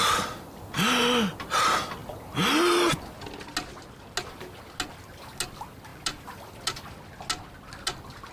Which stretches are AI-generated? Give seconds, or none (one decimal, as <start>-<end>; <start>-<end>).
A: none